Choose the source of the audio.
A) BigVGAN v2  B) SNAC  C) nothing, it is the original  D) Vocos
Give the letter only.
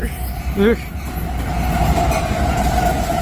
C